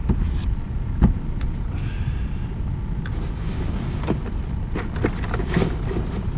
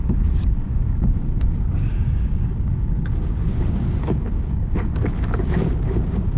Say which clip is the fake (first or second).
second